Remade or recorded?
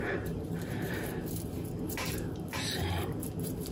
remade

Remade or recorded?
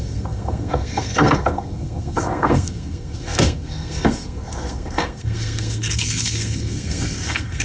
remade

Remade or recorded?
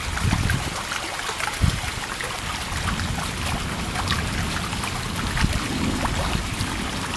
recorded